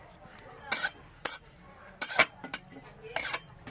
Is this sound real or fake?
real